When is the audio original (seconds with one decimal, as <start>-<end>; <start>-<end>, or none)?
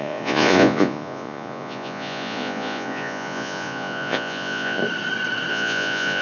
4.8-5.5